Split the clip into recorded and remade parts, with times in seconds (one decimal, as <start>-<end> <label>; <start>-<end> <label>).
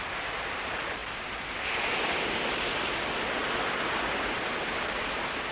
0.0-5.5 recorded